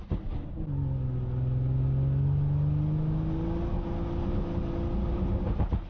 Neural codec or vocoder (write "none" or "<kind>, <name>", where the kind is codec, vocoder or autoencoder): none